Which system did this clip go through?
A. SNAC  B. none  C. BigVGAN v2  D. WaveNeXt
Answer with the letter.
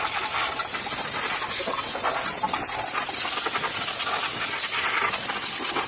B